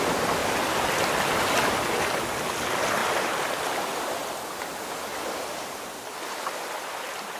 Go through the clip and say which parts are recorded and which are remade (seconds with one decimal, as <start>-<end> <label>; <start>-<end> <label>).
0.0-3.0 recorded; 3.0-3.7 remade; 3.7-5.1 recorded; 5.1-5.7 remade; 5.7-7.4 recorded